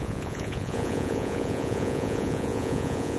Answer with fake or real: fake